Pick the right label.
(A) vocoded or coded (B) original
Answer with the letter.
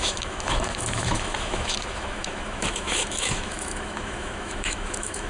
A